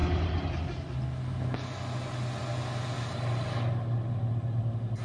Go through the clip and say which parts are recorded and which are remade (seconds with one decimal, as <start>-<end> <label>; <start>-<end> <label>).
0.0-5.0 recorded